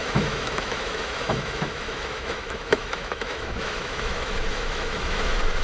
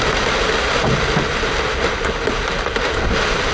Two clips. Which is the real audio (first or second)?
second